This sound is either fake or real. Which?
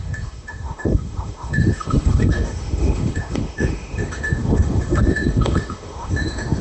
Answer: fake